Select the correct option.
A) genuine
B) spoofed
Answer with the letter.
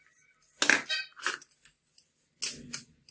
A